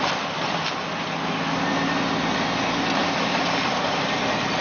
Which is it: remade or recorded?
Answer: recorded